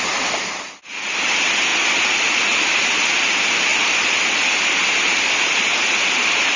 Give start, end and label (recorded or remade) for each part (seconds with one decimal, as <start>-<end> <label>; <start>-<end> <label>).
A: 0.0-6.6 recorded